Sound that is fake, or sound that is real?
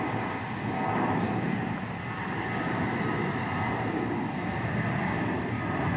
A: real